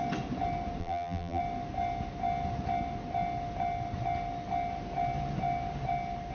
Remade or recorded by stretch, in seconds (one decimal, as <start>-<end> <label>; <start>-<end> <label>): 0.0-0.8 recorded; 0.8-1.4 remade; 1.4-6.3 recorded